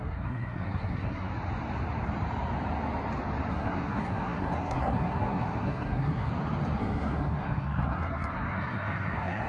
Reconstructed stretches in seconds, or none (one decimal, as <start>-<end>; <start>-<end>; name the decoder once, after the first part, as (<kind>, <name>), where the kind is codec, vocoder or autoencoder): 0.0-1.3 (codec, SNAC); 3.5-6.3; 6.8-9.5